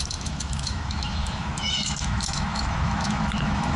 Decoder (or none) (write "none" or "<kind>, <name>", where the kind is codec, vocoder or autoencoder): autoencoder, DAC-VAE